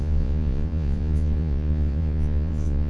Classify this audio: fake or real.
fake